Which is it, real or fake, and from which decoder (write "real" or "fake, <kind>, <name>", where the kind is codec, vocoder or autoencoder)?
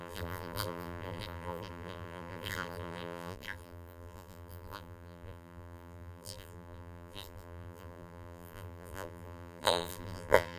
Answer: fake, vocoder, BigVGAN v2